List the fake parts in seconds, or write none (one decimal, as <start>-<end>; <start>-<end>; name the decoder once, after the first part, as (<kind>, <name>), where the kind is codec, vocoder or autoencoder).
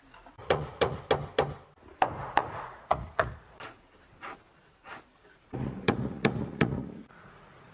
0.4-1.0 (vocoder, Vocos); 2.2-3.6; 5.1-7.7